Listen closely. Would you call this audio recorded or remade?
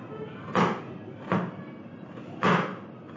recorded